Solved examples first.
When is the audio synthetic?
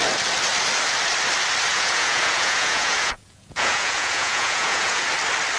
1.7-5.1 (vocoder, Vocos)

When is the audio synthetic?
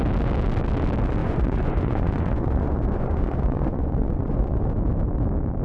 1.2-4.6 (vocoder, Vocos)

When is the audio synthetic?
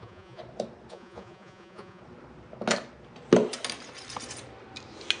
0.0-0.4 (vocoder, Vocos); 0.9-2.0